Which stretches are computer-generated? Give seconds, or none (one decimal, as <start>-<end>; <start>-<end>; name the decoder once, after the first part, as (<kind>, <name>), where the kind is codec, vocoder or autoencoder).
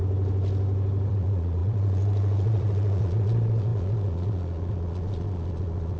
1.1-6.0 (vocoder, Vocos)